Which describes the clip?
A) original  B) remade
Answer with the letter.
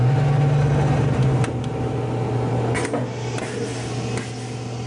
A